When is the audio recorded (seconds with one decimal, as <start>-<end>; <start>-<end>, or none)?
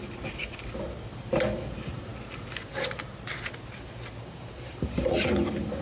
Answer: 2.1-4.2